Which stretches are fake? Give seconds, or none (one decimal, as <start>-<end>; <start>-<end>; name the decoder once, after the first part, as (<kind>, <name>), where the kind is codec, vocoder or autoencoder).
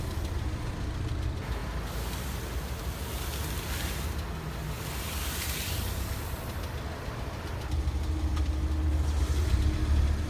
none